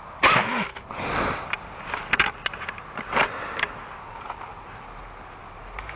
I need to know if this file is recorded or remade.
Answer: recorded